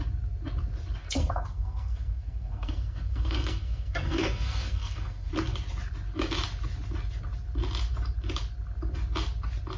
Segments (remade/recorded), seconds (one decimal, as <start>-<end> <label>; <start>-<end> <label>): 0.0-1.0 recorded; 1.0-5.3 remade; 5.3-9.8 recorded

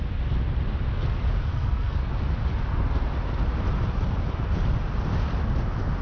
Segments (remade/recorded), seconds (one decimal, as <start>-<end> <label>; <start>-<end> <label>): 0.0-1.5 recorded; 1.5-2.1 remade; 2.1-6.0 recorded

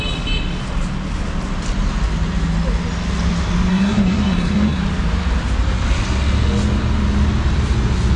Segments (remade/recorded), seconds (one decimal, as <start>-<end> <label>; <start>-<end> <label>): 0.0-3.7 recorded; 3.7-4.8 remade; 4.8-8.2 recorded

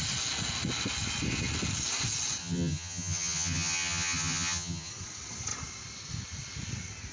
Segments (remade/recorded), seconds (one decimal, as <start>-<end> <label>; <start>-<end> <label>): 0.0-2.4 recorded; 2.4-4.9 remade; 4.9-7.1 recorded

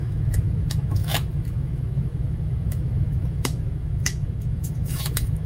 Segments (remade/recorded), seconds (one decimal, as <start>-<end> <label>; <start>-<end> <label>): 0.0-5.5 remade

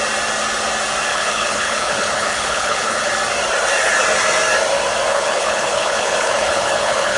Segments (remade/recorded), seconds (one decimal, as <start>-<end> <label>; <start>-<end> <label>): 0.0-1.1 recorded; 1.1-3.1 remade; 3.1-5.1 recorded; 5.1-7.2 remade

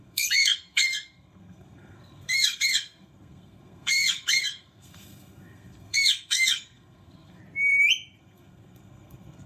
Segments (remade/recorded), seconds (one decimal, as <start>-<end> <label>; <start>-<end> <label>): 0.0-7.4 remade; 7.4-8.2 recorded; 8.2-9.5 remade